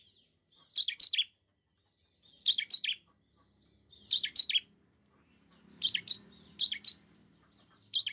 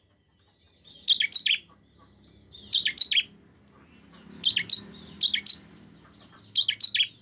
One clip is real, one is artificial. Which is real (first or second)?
second